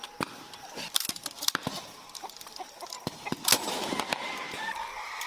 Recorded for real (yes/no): no